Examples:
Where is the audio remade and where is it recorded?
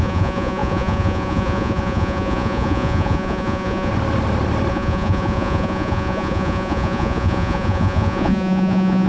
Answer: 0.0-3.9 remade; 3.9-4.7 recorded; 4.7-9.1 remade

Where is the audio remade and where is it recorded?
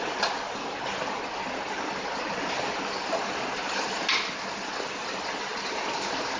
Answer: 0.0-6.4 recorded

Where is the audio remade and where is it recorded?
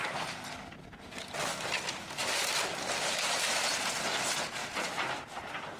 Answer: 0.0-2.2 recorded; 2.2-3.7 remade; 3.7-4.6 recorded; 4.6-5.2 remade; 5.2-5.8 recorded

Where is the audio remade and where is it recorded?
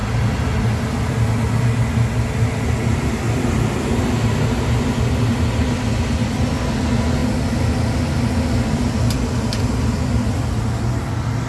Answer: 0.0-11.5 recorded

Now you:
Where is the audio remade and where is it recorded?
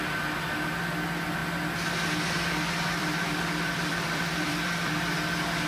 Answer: 0.0-3.0 recorded; 3.0-4.9 remade; 4.9-5.7 recorded